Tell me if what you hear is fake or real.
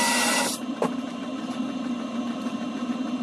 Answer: fake